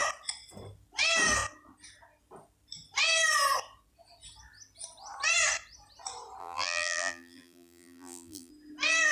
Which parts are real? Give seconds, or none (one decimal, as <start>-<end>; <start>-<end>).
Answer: 0.0-6.4; 8.5-9.1